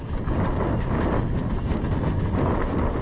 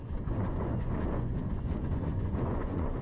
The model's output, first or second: second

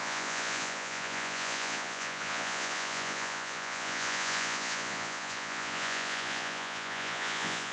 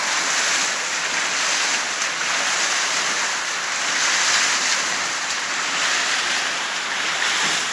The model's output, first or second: first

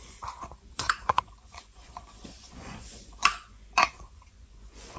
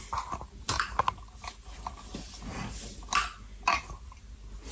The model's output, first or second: first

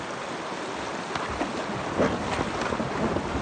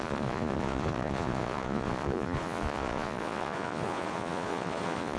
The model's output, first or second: second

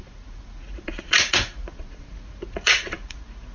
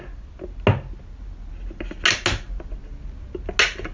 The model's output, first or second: first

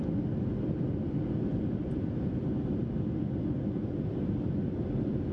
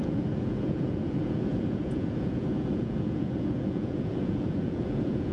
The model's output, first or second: second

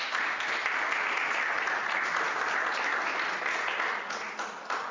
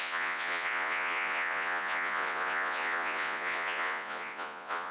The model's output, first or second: second